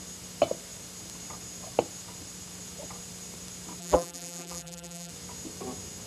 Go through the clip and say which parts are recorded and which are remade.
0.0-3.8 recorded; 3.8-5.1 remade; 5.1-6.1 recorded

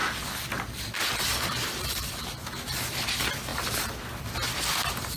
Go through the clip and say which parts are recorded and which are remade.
0.0-3.1 remade; 3.1-5.2 recorded

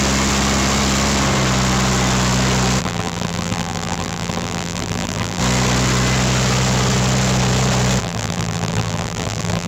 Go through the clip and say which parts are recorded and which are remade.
0.0-2.8 recorded; 2.8-5.4 remade; 5.4-8.0 recorded; 8.0-9.7 remade

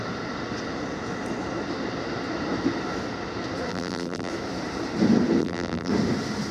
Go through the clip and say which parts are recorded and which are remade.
0.0-3.7 recorded; 3.7-4.3 remade; 4.3-5.4 recorded; 5.4-5.9 remade; 5.9-6.5 recorded